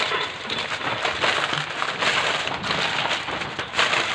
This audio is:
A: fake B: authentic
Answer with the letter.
B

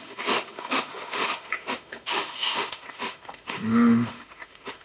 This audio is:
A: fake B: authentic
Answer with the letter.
A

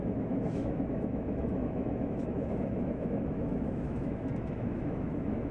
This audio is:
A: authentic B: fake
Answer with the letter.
B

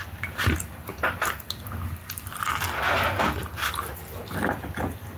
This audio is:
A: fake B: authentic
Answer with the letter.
B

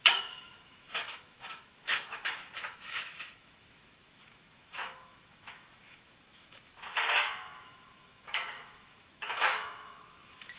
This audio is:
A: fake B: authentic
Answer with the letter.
A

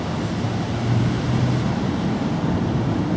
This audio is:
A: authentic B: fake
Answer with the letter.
A